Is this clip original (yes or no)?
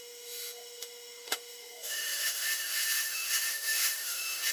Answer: no